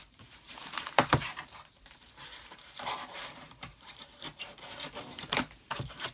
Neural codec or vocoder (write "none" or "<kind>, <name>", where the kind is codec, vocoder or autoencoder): vocoder, BigVGAN v2